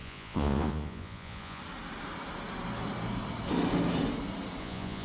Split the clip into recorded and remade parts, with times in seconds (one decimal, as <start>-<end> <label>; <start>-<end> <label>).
0.0-1.6 remade; 1.6-4.6 recorded; 4.6-5.0 remade